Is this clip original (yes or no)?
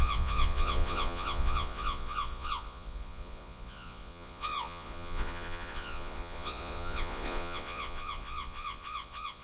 no